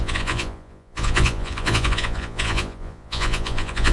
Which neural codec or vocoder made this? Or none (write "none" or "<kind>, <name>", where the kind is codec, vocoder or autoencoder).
vocoder, Vocos